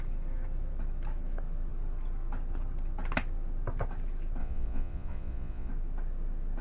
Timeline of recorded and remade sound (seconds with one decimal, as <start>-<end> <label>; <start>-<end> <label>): 0.0-4.4 recorded; 4.4-5.7 remade; 5.7-6.6 recorded